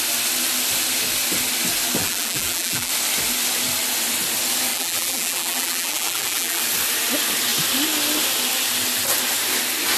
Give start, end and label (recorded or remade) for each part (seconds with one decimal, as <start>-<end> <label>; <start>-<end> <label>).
0.0-2.0 recorded; 2.0-2.9 remade; 2.9-4.7 recorded; 4.7-6.6 remade; 6.6-10.0 recorded